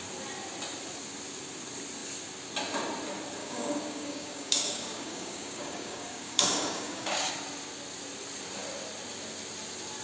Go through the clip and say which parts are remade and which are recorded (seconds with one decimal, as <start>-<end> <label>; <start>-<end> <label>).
0.0-3.4 recorded; 3.4-7.3 remade; 7.3-10.0 recorded